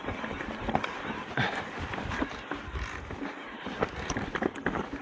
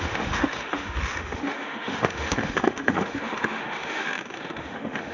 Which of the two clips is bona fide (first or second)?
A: first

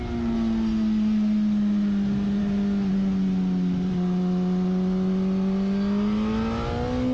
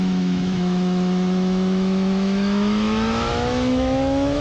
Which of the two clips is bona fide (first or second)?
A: first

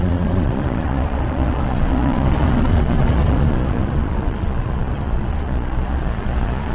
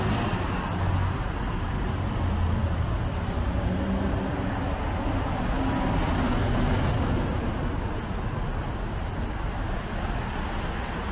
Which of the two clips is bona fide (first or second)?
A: second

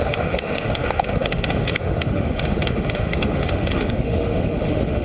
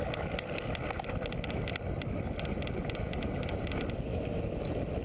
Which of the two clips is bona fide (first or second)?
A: second